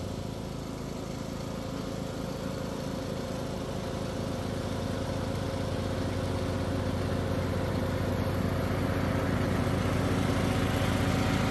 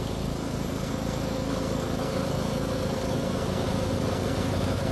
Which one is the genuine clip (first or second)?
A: first